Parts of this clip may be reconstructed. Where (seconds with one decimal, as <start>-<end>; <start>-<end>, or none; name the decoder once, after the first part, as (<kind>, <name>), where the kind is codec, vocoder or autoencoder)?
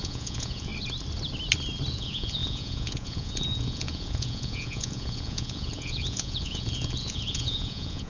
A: 0.0-0.7 (vocoder, Vocos); 1.9-8.1